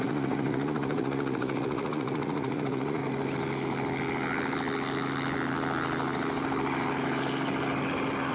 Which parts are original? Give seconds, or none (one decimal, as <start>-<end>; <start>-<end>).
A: 3.0-8.3